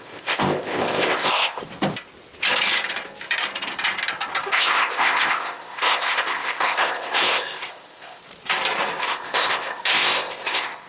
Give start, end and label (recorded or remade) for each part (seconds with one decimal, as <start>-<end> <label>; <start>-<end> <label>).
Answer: 0.0-1.6 remade; 1.6-4.5 recorded; 4.5-8.2 remade; 8.2-9.0 recorded; 9.0-10.9 remade